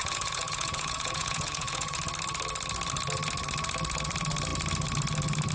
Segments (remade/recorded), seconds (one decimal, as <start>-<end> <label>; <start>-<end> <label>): 0.0-2.0 remade; 2.0-5.5 recorded